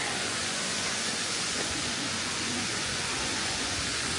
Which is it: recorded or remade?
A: remade